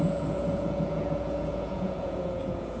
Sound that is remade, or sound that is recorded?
remade